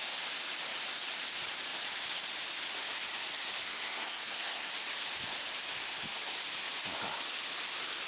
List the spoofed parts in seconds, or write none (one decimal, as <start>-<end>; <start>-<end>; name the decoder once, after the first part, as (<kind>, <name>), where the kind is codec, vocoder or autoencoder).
3.7-4.7 (codec, SNAC)